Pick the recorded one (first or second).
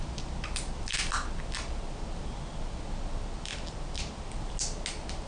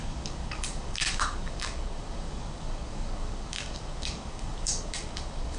first